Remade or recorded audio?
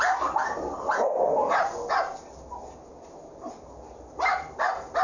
recorded